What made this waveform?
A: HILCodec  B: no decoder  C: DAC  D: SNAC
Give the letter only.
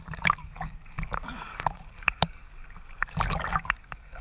C